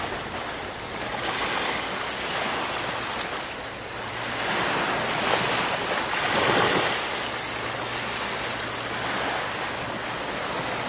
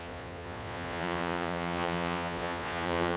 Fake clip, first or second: second